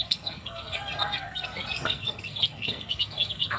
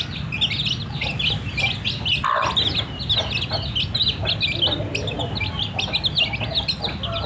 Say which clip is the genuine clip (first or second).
second